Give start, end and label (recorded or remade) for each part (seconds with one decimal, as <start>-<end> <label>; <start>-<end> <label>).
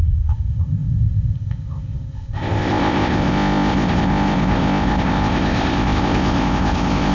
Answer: 0.0-7.1 remade